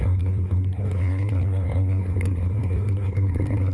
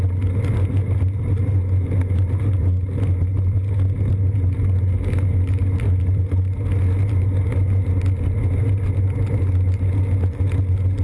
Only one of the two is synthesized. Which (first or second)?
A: first